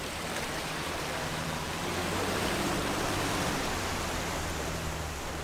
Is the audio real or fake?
fake